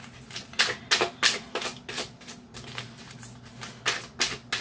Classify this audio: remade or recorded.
recorded